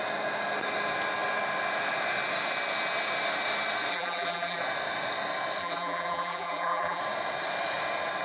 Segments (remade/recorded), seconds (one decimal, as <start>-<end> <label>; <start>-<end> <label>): 0.0-3.9 recorded; 3.9-4.6 remade; 4.6-5.6 recorded; 5.6-7.0 remade; 7.0-8.2 recorded